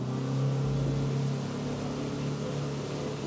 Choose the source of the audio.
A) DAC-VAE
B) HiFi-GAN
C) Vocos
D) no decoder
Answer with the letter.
D